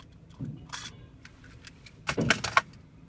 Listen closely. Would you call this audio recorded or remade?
recorded